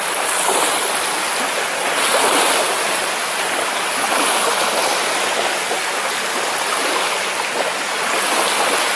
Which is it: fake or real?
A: real